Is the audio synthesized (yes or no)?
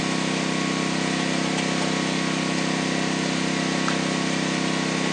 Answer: no